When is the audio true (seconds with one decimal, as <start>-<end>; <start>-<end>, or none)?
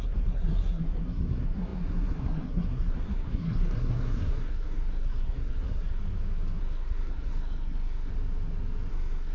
6.0-6.6; 8.1-8.9